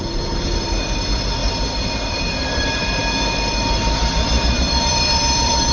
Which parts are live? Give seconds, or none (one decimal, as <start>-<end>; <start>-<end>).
3.0-4.9